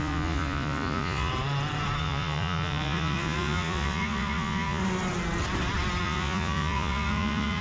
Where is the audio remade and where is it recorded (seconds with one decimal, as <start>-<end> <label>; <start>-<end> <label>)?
0.0-1.3 remade; 1.3-2.0 recorded; 2.0-4.8 remade; 4.8-6.0 recorded; 6.0-7.6 remade